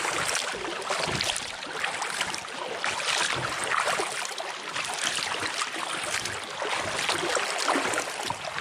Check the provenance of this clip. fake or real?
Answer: real